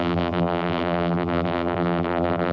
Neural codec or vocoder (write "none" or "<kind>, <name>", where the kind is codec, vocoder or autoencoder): vocoder, BigVGAN v2